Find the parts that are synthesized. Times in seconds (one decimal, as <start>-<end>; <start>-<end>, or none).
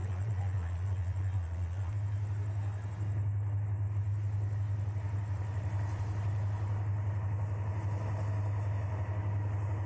0.0-1.9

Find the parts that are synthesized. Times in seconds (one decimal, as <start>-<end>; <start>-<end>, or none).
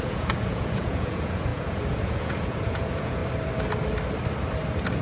0.0-3.2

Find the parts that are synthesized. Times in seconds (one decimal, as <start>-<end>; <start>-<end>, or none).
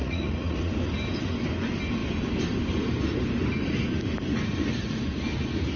0.0-0.7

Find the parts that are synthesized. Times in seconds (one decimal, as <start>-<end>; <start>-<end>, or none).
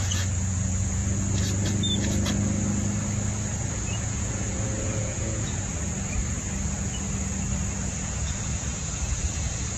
0.0-1.0; 3.7-5.7; 7.8-9.8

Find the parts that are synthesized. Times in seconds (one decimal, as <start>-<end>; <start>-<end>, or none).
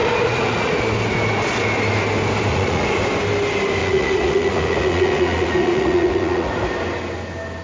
0.0-0.8; 2.5-3.0; 3.8-6.5